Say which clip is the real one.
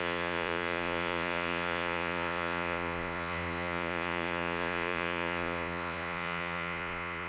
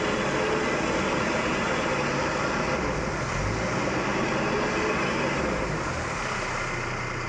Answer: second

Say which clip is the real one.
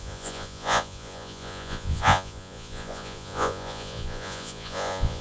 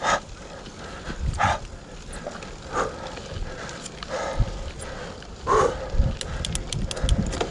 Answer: second